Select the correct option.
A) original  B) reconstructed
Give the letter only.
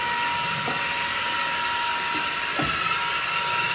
A